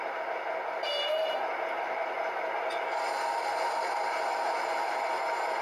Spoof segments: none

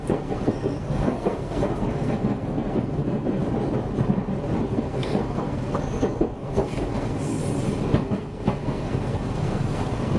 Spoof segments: 0.0-3.4 (codec, SNAC); 4.7-7.4; 8.0-10.2

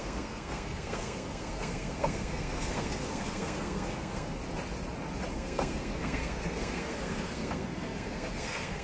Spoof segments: 0.0-4.4 (codec, SNAC); 5.3-8.8

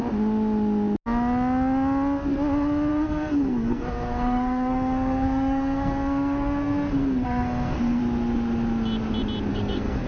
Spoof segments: 2.9-8.0 (codec, SNAC); 9.5-10.1

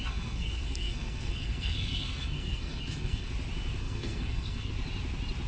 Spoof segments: 0.0-3.3 (codec, SNAC); 3.8-4.7

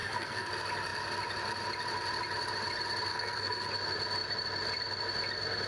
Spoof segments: 0.0-0.5 (codec, SNAC); 3.1-3.7